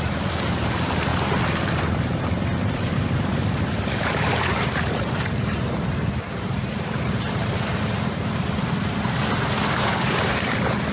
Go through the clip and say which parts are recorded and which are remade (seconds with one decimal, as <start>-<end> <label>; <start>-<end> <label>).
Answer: 0.0-1.1 remade; 1.1-1.8 recorded; 1.8-10.9 remade